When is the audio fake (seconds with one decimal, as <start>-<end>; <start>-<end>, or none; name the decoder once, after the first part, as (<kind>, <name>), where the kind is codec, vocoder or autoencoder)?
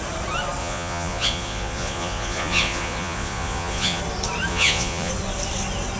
0.6-4.0 (vocoder, Vocos); 4.5-5.1